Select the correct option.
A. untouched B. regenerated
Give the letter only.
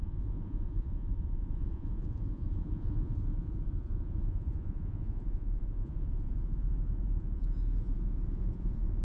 B